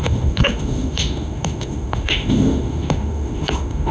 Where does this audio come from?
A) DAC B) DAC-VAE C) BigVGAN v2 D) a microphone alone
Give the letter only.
B